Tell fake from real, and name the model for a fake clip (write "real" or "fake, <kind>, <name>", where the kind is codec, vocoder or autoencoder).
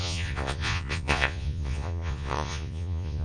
fake, vocoder, Vocos